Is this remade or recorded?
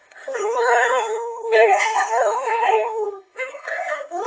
remade